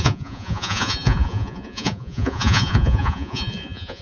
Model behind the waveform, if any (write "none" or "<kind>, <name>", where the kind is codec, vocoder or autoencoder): vocoder, Vocos